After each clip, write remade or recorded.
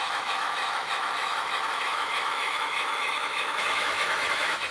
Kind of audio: remade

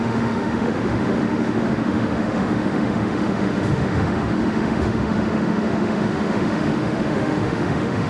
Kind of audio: remade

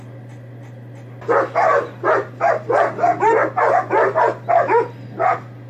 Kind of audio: recorded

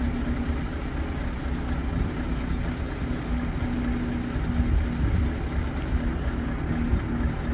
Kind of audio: recorded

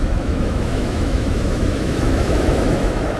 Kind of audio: remade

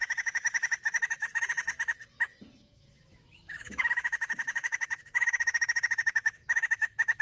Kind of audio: remade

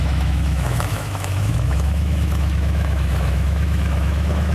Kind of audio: remade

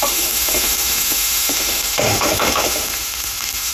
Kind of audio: remade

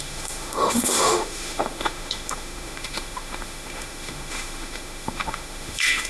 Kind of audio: remade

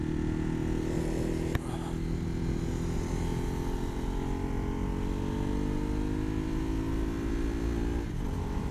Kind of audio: recorded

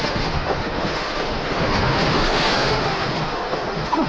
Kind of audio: remade